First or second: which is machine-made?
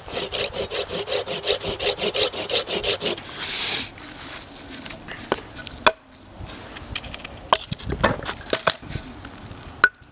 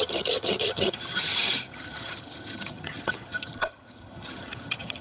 second